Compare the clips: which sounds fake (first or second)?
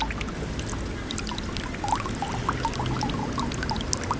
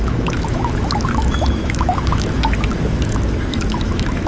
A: second